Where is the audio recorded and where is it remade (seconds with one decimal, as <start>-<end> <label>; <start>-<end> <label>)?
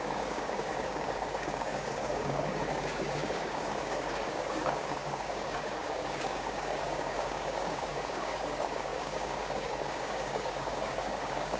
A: 0.0-11.6 remade